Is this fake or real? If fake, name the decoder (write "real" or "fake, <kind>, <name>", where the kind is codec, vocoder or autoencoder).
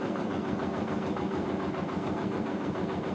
fake, codec, SNAC